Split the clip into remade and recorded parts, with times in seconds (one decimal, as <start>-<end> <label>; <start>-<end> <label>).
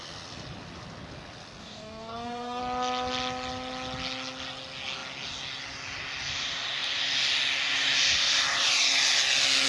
0.0-1.6 recorded; 1.6-2.6 remade; 2.6-9.7 recorded